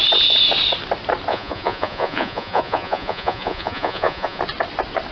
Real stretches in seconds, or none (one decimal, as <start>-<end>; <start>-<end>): 0.0-1.3; 4.4-5.1